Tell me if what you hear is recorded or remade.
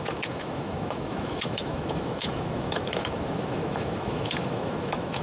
remade